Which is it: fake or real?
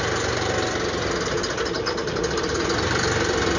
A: real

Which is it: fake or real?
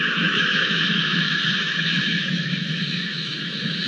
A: fake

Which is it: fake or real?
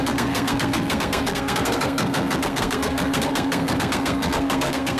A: fake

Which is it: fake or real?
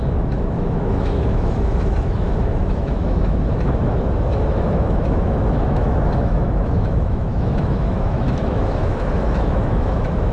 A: fake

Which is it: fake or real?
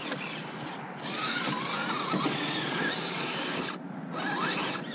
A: real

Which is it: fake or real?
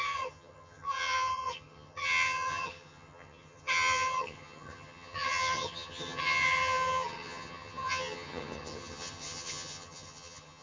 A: fake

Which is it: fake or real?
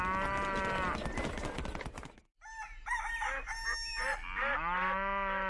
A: real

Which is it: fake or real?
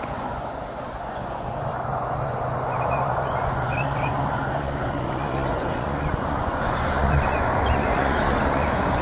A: fake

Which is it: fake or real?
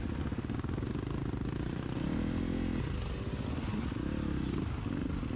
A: real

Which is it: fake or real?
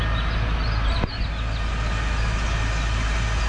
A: real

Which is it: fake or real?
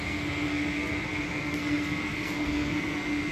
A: fake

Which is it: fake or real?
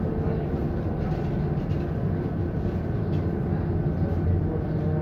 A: real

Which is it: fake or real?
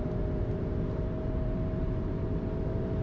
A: fake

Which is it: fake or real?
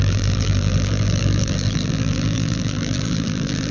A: fake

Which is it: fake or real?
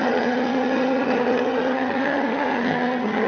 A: fake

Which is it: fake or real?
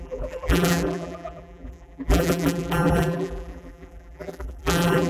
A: fake